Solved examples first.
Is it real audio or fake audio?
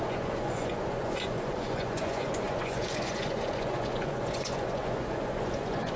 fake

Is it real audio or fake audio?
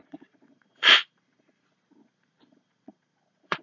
fake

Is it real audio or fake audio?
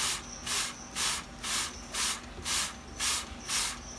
real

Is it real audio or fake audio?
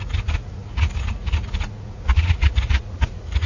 fake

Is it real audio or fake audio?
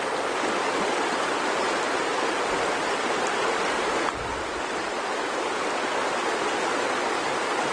real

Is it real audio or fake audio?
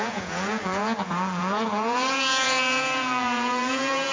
fake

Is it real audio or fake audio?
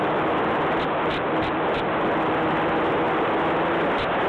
real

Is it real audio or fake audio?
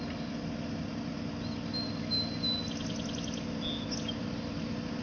real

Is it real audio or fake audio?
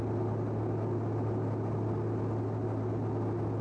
real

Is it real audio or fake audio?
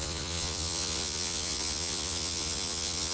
fake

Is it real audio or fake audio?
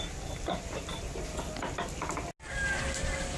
real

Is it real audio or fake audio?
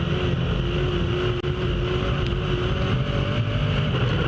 real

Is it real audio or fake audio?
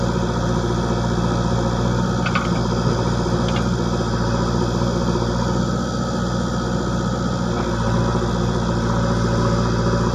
real